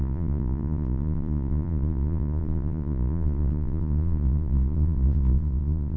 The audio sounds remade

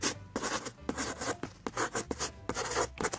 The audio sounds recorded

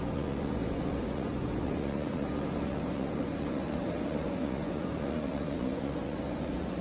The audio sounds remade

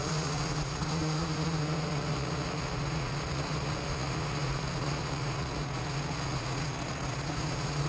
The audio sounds remade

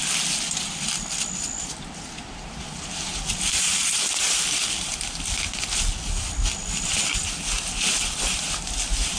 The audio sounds recorded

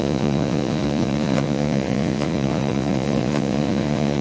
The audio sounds remade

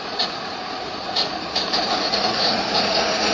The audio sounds remade